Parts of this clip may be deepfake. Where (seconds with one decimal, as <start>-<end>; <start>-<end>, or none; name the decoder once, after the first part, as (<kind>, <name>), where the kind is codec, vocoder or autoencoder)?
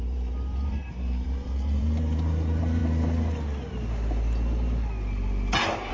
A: 0.0-2.8 (vocoder, BigVGAN v2)